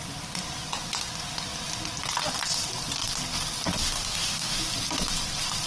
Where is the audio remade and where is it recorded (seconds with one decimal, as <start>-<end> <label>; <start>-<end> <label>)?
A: 0.0-3.8 recorded; 3.8-4.6 remade; 4.6-5.7 recorded